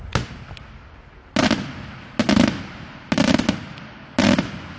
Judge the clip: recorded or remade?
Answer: recorded